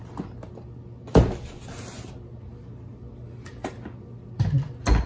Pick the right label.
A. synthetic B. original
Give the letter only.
B